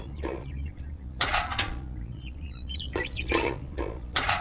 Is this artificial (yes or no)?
yes